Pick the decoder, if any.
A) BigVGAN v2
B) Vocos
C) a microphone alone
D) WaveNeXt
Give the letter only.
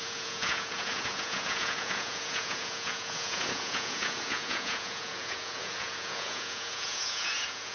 B